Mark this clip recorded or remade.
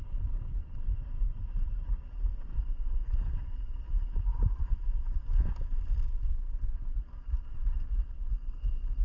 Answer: recorded